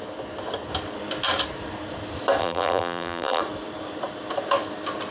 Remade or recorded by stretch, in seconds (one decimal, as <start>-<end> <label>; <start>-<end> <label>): 0.0-2.4 recorded; 2.4-3.4 remade; 3.4-5.1 recorded